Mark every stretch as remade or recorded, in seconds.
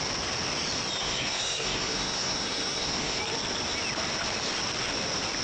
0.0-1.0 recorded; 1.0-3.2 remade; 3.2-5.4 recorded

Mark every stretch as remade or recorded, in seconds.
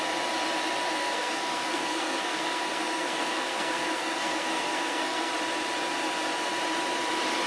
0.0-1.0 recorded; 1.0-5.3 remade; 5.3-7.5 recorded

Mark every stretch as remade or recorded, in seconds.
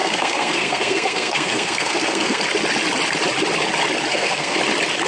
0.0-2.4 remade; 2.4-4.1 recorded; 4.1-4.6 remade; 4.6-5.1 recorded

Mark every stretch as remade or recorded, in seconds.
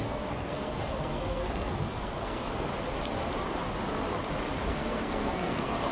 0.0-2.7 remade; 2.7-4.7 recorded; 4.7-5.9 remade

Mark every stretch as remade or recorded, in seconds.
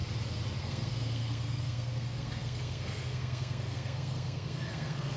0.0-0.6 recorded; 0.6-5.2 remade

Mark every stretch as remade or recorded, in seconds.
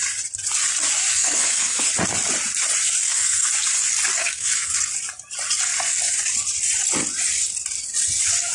0.0-1.1 recorded; 1.1-1.9 remade; 1.9-3.0 recorded; 3.0-3.5 remade; 3.5-4.2 recorded; 4.2-4.7 remade; 4.7-8.5 recorded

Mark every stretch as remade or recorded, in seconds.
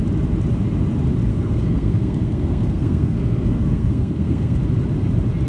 0.0-1.3 recorded; 1.3-4.6 remade; 4.6-5.5 recorded